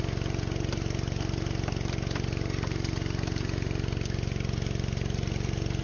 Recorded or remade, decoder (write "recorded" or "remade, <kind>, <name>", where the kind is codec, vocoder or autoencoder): recorded